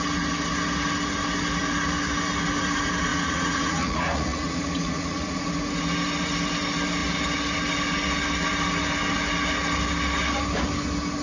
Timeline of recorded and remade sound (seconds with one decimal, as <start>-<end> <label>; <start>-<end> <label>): 0.0-3.1 recorded; 3.1-5.5 remade; 5.5-11.2 recorded